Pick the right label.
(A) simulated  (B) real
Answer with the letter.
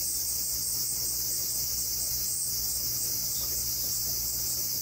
B